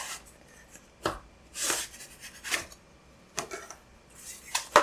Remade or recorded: remade